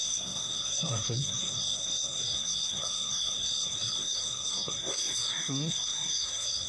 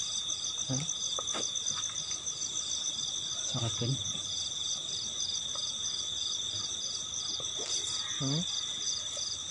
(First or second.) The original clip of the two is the second